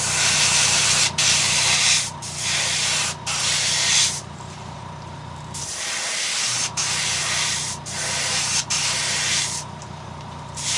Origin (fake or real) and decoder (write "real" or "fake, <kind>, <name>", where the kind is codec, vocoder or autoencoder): fake, vocoder, BigVGAN v2